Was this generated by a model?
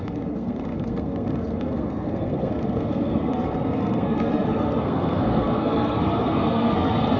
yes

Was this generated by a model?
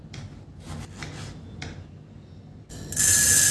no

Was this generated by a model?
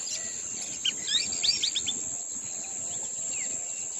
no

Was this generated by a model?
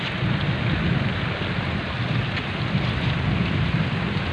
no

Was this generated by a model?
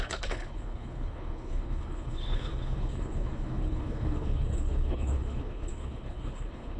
yes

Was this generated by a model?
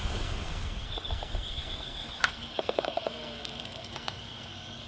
yes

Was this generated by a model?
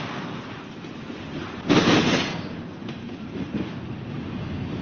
no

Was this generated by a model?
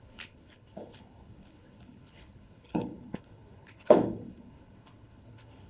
yes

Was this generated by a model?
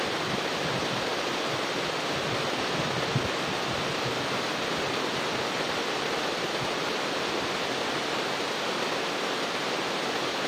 no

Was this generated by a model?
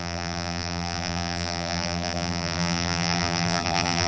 yes